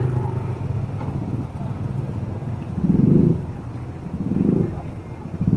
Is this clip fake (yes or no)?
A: no